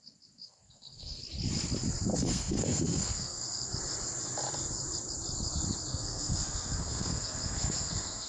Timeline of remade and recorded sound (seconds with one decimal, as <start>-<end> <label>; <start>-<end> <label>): 0.0-0.4 recorded; 0.4-1.2 remade; 1.2-2.1 recorded; 2.1-3.7 remade; 3.7-5.9 recorded; 5.9-8.3 remade